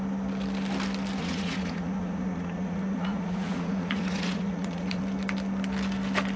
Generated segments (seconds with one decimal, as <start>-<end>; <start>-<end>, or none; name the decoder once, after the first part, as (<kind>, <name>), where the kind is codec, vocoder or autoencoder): 1.2-5.0 (vocoder, Vocos)